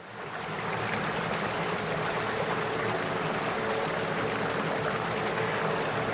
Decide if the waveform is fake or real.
real